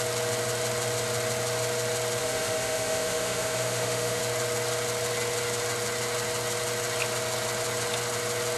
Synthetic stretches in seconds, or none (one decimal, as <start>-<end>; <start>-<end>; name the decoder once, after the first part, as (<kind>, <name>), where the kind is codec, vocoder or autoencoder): 2.2-4.2 (autoencoder, DAC-VAE)